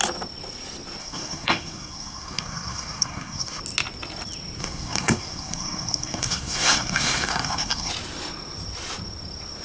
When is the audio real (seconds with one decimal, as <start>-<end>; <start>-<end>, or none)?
0.0-1.0; 3.6-4.6; 7.9-9.6